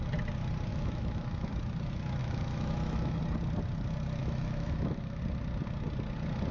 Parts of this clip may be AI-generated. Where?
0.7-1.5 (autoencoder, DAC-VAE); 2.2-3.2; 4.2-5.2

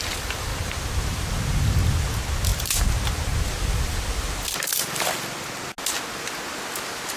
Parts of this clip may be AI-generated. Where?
none

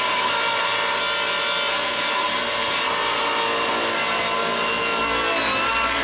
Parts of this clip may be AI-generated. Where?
none

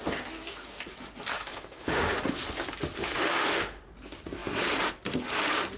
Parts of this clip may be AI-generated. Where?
1.3-2.2 (autoencoder, DAC-VAE); 3.0-3.8

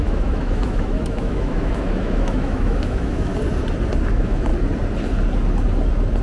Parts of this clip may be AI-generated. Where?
0.0-3.3 (autoencoder, DAC-VAE); 4.1-4.5